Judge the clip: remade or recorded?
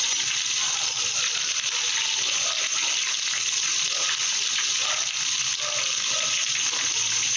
recorded